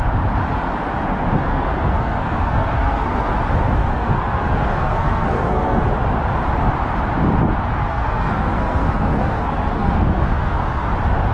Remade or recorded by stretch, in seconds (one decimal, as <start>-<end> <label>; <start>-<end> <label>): 0.0-1.5 recorded; 1.5-3.3 remade; 3.3-3.8 recorded; 3.8-5.8 remade; 5.8-7.8 recorded; 7.8-10.9 remade; 10.9-11.3 recorded